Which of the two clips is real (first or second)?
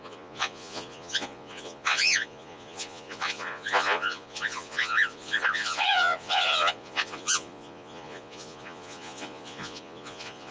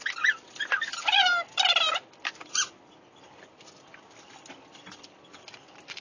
second